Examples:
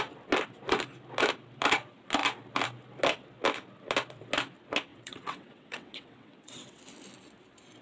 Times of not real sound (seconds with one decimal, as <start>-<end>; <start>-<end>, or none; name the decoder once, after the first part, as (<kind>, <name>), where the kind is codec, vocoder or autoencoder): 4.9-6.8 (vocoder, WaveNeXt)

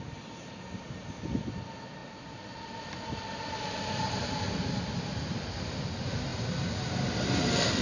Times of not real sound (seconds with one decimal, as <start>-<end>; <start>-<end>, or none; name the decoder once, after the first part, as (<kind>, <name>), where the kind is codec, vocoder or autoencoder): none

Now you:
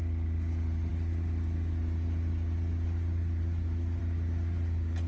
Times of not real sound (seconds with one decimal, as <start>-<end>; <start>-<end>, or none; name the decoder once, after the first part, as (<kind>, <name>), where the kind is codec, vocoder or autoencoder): none

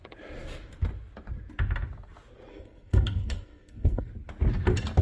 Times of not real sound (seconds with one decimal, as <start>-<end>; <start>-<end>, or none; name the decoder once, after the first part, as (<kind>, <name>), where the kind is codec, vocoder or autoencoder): 2.5-4.1 (codec, SNAC)

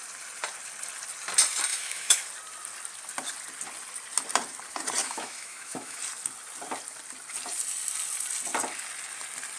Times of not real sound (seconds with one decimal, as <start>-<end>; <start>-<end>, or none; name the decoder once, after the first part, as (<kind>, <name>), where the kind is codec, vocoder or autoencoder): 1.7-2.3 (autoencoder, DAC-VAE); 5.0-6.0

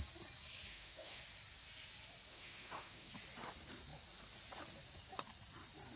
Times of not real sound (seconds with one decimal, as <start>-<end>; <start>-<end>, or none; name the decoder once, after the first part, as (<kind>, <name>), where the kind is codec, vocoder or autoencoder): 0.7-1.2 (autoencoder, DAC-VAE); 2.3-3.1